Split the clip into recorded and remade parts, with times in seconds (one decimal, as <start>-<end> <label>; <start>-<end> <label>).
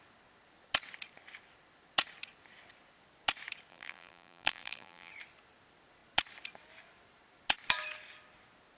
0.0-3.7 recorded; 3.7-5.1 remade; 5.1-8.8 recorded